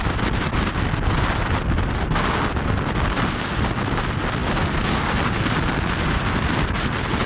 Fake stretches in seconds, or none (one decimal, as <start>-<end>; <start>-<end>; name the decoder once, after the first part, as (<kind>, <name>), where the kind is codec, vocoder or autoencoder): none

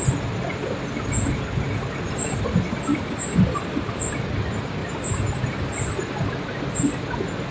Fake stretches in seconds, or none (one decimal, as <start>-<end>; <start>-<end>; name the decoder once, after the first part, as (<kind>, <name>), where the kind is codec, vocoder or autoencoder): 2.9-4.0 (vocoder, BigVGAN v2); 4.8-6.1

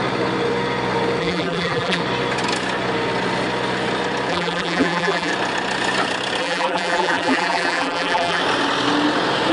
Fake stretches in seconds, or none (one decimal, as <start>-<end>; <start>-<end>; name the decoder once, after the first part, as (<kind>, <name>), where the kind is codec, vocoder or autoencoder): 1.2-2.0 (vocoder, BigVGAN v2); 4.3-5.3; 6.4-8.4

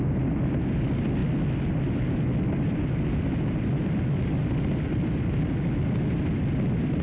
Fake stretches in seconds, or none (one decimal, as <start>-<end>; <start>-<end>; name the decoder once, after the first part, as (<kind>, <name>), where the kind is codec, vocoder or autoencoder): none

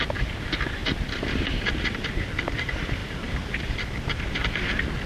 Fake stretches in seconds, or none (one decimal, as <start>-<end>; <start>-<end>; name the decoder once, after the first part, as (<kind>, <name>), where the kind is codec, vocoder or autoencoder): 0.8-2.3 (vocoder, BigVGAN v2); 3.0-3.6

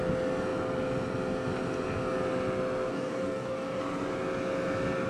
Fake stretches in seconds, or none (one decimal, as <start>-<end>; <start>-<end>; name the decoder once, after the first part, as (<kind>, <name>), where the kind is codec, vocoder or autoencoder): 2.9-3.8 (codec, DAC)

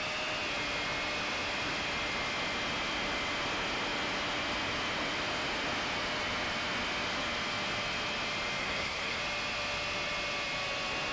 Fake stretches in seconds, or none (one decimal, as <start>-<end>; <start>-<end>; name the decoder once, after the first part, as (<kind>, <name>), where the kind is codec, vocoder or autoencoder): 8.6-9.2 (codec, SNAC)